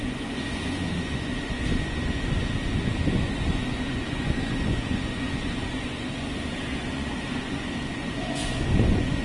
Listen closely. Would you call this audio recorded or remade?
remade